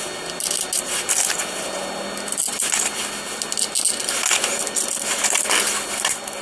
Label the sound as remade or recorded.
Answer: recorded